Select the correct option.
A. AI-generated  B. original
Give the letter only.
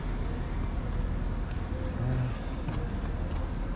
B